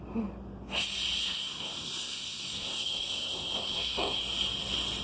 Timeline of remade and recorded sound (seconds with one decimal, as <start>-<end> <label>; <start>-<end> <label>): 0.0-1.2 recorded; 1.2-4.2 remade; 4.2-5.0 recorded